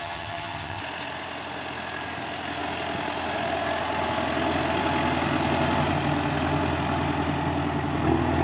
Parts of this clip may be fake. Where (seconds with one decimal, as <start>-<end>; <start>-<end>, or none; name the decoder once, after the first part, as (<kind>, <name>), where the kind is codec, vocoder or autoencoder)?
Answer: 0.0-0.8 (vocoder, HiFi-GAN)